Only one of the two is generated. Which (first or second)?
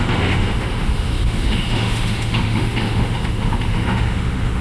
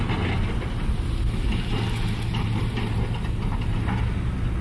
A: first